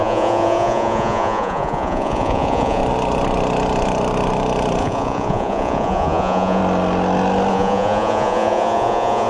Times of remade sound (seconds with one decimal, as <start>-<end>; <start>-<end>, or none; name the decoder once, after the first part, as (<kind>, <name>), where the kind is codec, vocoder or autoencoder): 0.0-2.8 (vocoder, Vocos); 4.8-6.6; 7.5-9.3